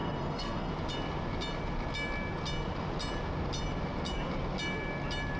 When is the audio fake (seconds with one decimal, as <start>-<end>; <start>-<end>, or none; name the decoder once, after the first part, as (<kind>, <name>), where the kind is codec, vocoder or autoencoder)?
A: 0.0-0.7 (codec, SNAC)